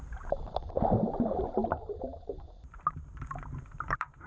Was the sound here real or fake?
fake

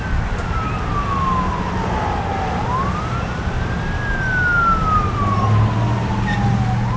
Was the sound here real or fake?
real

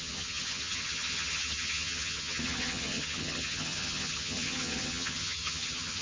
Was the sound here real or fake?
fake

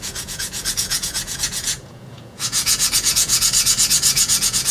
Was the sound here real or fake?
fake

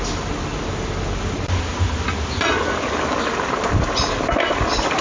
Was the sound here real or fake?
real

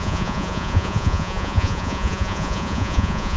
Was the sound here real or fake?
fake